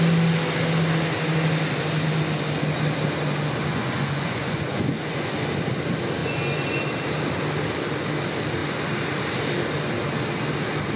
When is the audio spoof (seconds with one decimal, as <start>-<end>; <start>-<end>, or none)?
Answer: 3.7-5.3; 6.2-6.8